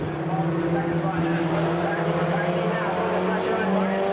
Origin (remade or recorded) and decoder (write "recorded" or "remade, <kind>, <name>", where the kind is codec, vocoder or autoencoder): recorded